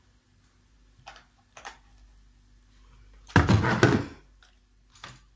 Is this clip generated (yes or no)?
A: no